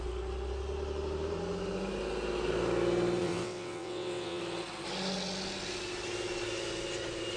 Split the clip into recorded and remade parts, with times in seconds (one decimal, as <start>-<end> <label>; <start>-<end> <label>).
0.0-3.2 recorded; 3.2-4.4 remade; 4.4-7.4 recorded